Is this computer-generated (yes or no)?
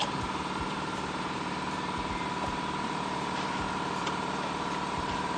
yes